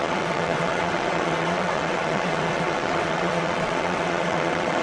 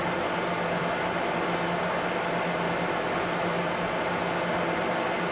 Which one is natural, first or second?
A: second